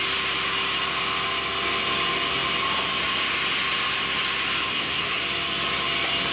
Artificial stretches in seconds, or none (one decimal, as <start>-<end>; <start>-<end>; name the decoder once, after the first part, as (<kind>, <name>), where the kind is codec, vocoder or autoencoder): 4.7-5.2 (codec, SNAC)